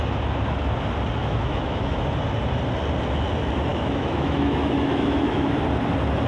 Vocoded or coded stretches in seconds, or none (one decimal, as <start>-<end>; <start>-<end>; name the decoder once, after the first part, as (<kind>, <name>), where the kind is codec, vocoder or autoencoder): 1.2-2.0 (autoencoder, DAC-VAE); 3.7-5.5